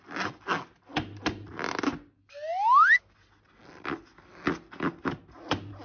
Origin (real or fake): real